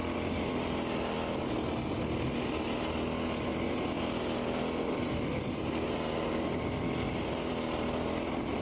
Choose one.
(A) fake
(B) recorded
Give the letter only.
B